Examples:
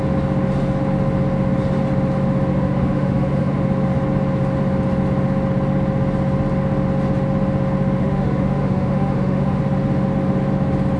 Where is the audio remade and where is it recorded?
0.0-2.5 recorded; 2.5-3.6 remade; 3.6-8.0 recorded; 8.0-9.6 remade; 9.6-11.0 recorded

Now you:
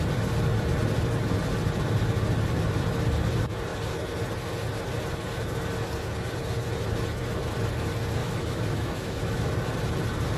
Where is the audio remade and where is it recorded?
0.0-8.2 recorded; 8.2-9.5 remade; 9.5-10.4 recorded

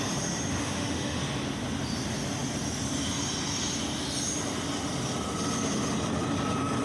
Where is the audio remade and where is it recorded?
0.0-0.6 recorded; 0.6-1.2 remade; 1.2-6.8 recorded

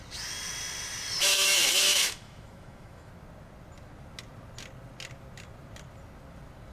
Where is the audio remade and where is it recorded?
0.0-1.2 recorded; 1.2-3.1 remade; 3.1-6.7 recorded

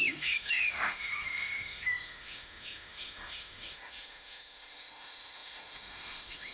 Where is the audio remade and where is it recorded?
0.0-6.5 remade